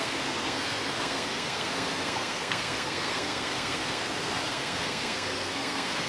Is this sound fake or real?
fake